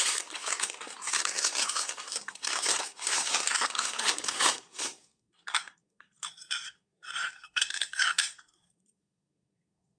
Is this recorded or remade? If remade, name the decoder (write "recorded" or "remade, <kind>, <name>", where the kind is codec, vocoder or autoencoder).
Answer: remade, codec, SNAC